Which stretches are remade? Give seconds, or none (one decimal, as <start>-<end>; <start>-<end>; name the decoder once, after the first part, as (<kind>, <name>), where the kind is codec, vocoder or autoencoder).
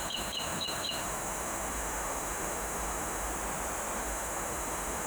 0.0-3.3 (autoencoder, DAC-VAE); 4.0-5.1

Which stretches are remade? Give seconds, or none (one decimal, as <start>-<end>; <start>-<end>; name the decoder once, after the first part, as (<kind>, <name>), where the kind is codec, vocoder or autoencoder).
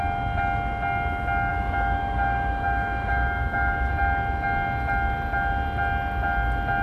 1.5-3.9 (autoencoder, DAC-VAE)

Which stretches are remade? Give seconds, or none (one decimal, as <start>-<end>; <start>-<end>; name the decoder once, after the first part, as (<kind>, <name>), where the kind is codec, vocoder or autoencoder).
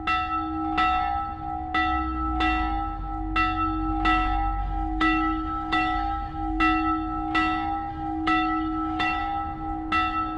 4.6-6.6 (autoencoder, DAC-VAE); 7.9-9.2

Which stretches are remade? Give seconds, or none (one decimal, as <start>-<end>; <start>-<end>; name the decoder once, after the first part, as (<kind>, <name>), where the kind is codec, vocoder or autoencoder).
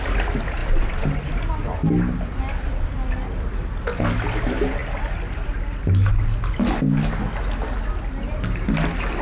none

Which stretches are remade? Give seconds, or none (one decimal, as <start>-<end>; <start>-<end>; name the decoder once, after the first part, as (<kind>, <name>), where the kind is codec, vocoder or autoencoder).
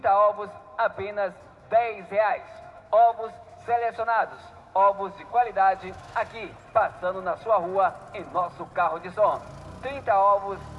1.9-6.5 (autoencoder, DAC-VAE)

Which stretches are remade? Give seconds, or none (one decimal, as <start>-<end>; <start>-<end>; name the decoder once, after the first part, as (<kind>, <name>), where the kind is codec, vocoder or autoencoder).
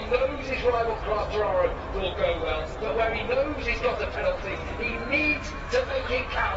4.6-6.6 (autoencoder, DAC-VAE)